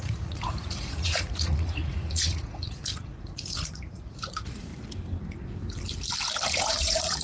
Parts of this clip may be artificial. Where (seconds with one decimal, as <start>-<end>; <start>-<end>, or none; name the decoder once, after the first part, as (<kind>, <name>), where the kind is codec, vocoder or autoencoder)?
0.0-4.7 (vocoder, Vocos); 6.5-7.2